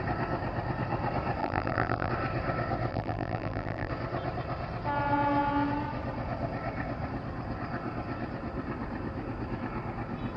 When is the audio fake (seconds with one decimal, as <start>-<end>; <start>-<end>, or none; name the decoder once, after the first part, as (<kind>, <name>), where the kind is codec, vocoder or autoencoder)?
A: 1.4-2.1 (vocoder, BigVGAN v2); 2.9-3.9